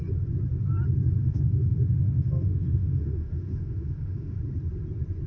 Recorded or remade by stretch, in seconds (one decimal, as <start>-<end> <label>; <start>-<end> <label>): 0.0-1.2 recorded; 1.2-4.4 remade; 4.4-5.3 recorded